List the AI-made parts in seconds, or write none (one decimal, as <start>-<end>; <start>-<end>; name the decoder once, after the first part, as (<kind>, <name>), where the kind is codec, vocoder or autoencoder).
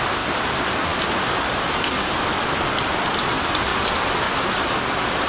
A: none